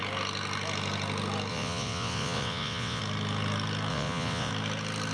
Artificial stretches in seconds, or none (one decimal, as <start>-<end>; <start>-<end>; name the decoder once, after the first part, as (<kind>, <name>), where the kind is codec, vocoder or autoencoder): 1.5-3.0 (vocoder, WaveNeXt); 3.9-4.5